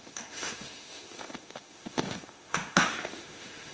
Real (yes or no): no